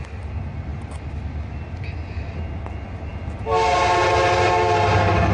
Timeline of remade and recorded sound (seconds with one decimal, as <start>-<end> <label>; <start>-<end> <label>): 0.0-5.3 recorded